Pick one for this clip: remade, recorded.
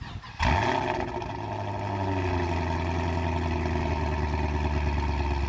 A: recorded